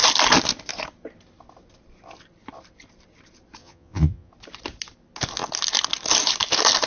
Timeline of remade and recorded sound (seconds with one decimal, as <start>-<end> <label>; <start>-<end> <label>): 0.0-3.6 recorded; 3.6-4.3 remade; 4.3-6.9 recorded